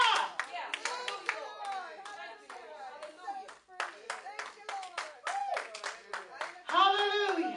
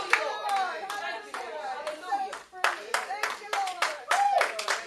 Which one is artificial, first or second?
second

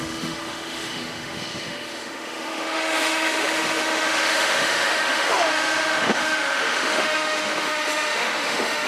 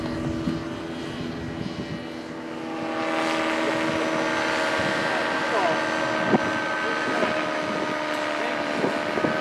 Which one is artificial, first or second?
first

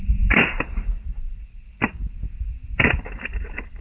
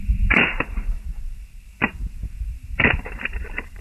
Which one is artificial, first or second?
second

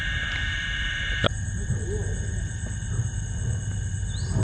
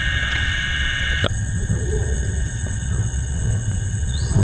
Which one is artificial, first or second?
second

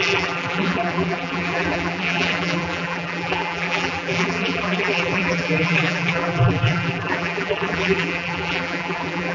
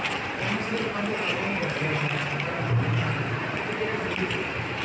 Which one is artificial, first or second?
first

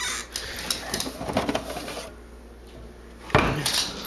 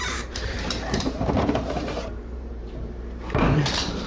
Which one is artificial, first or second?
second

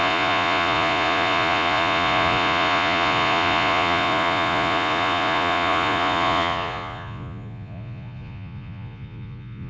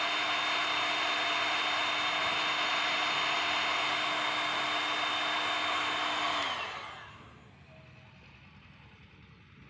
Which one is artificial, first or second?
first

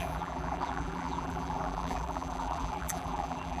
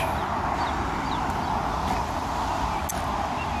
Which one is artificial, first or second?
first